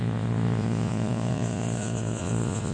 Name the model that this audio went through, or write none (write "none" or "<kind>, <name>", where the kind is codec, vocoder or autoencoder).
vocoder, Vocos